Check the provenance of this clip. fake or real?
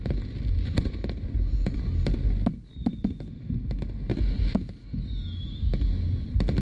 real